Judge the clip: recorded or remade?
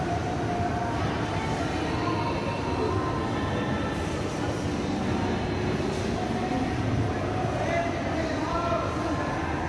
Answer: recorded